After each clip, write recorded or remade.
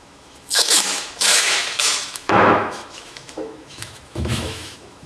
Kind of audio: remade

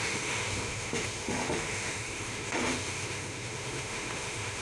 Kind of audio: remade